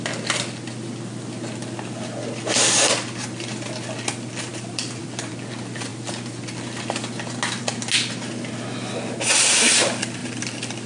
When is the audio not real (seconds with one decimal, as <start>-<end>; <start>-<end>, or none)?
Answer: 4.5-5.3; 10.2-10.9